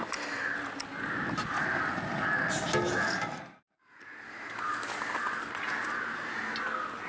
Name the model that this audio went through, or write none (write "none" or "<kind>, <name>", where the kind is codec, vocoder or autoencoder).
none